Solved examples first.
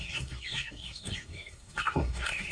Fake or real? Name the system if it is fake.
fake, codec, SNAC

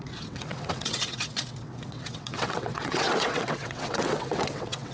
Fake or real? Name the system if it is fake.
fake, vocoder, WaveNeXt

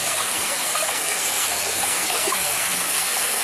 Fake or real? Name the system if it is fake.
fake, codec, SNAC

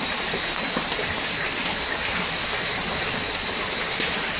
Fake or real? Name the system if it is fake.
real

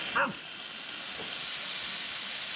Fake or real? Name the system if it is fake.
real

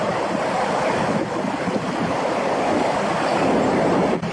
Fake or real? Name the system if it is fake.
fake, vocoder, BigVGAN v2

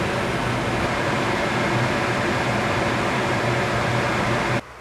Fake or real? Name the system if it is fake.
real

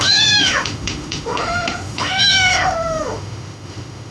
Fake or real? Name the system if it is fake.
fake, autoencoder, DAC-VAE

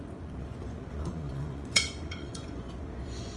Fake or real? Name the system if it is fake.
fake, vocoder, Vocos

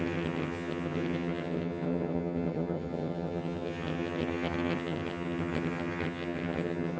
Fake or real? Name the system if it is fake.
fake, vocoder, HiFi-GAN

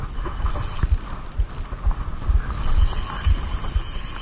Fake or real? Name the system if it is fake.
real